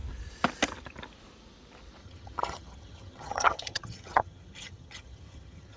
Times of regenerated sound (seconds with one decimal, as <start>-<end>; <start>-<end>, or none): 2.0-5.8